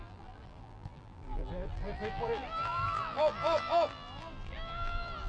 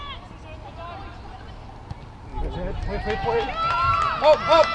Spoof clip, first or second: first